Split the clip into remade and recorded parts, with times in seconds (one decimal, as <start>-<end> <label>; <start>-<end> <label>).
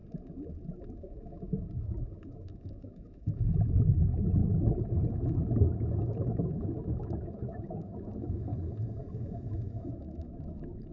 0.0-0.9 recorded; 0.9-4.4 remade; 4.4-5.1 recorded; 5.1-8.5 remade; 8.5-9.1 recorded; 9.1-10.9 remade